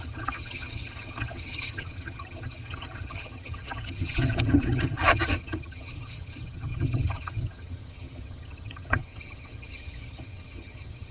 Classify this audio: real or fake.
fake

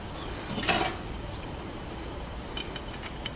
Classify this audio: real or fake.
real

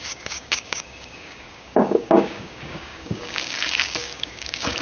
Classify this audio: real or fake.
fake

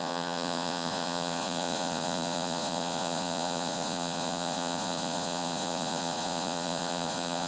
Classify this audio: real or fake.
fake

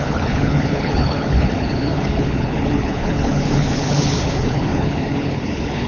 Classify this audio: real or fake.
fake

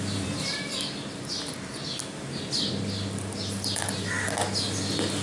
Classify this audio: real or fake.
real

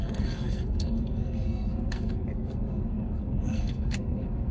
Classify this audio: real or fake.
fake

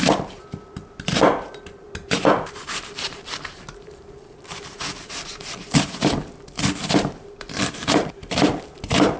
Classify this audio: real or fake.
fake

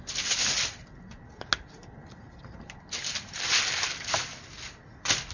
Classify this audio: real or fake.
real